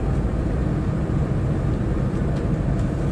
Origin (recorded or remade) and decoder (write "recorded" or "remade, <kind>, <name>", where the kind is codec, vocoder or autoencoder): recorded